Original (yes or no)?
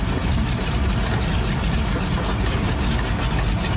yes